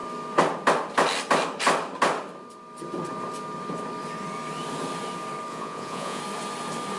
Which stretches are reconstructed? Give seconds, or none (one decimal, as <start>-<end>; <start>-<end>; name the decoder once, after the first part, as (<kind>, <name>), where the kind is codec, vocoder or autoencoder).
5.5-6.2 (vocoder, Vocos)